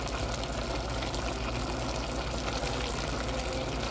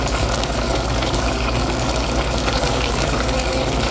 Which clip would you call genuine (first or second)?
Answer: first